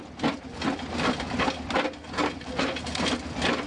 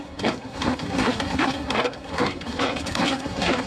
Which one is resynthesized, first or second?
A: second